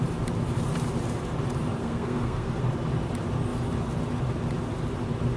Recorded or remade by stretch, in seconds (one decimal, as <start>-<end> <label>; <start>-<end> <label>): 0.0-1.8 recorded; 1.8-2.6 remade; 2.6-5.4 recorded